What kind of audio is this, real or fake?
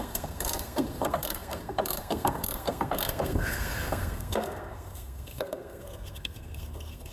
fake